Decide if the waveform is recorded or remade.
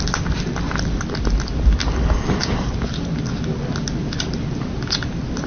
recorded